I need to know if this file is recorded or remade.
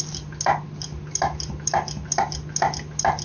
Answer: recorded